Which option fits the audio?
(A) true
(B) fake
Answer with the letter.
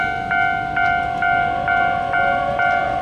A